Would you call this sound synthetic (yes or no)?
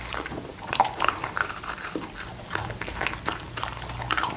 no